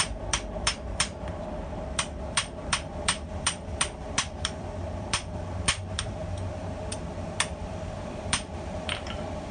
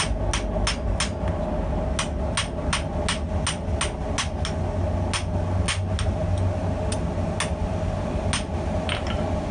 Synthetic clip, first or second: first